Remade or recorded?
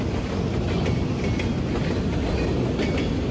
recorded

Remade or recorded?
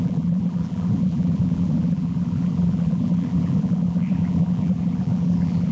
remade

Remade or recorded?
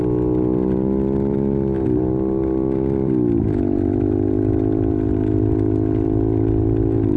recorded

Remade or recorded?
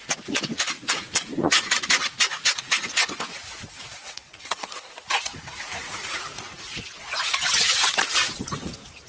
remade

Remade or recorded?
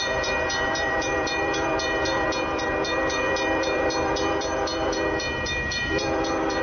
remade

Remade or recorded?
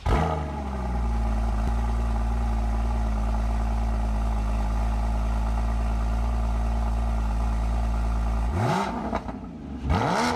recorded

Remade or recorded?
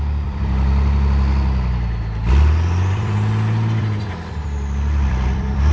remade